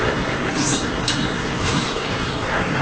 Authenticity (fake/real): fake